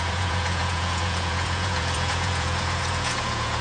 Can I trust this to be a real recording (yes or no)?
no